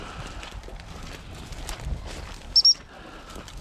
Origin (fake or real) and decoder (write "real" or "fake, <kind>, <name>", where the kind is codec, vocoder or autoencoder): real